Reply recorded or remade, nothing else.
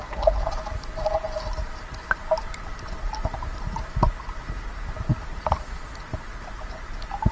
recorded